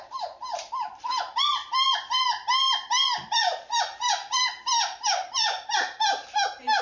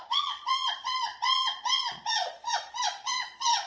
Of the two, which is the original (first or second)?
first